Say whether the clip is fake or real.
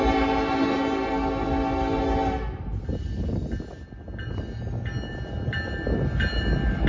real